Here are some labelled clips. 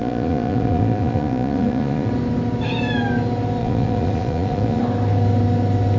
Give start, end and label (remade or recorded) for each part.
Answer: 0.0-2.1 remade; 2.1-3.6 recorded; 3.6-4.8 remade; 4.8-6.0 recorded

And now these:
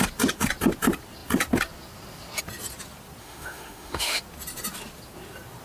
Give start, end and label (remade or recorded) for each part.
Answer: 0.0-3.2 recorded; 3.2-4.2 remade; 4.2-5.6 recorded

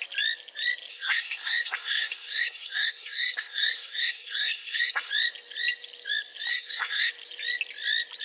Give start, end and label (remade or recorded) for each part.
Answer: 0.0-0.9 recorded; 0.9-5.1 remade; 5.1-6.5 recorded; 6.5-7.1 remade; 7.1-8.2 recorded